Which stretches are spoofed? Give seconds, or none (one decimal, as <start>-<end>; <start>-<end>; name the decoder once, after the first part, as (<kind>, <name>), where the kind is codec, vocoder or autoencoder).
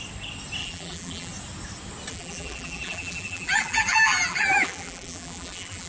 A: 0.6-1.3 (vocoder, BigVGAN v2); 2.1-5.9